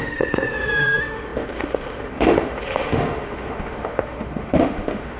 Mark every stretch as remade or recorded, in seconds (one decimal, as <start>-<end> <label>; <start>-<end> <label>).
0.0-5.2 remade